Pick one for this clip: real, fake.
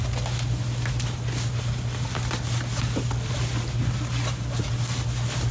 real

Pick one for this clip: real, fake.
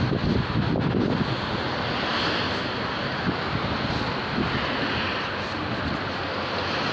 real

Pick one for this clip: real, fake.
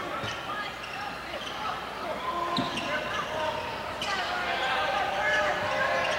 real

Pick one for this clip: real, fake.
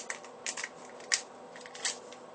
real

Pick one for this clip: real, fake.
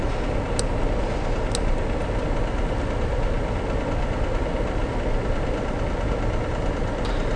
real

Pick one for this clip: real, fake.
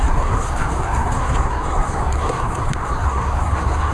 fake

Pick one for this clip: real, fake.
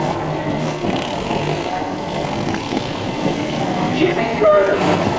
fake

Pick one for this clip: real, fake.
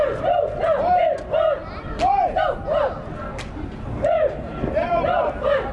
real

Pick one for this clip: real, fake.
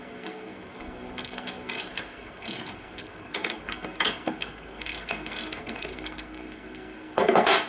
fake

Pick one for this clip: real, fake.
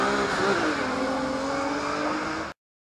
real